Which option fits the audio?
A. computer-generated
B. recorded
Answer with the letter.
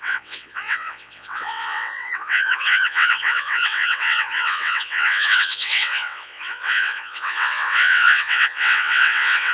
A